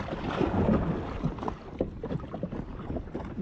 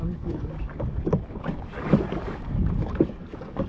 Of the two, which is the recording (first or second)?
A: first